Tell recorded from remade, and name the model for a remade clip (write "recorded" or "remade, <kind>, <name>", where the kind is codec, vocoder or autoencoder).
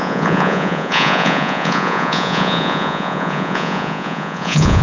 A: remade, vocoder, Vocos